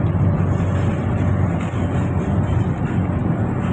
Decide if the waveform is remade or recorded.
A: recorded